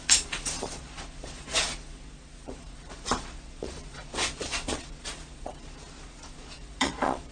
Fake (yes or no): yes